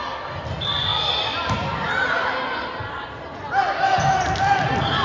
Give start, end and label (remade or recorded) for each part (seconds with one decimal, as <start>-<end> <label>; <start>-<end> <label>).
0.0-5.0 recorded